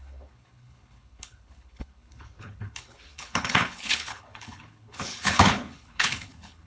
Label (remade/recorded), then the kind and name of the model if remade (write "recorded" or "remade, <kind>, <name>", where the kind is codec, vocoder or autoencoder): remade, codec, HILCodec